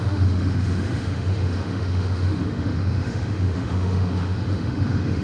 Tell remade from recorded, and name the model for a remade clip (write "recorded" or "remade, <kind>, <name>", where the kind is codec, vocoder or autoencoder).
remade, autoencoder, DAC-VAE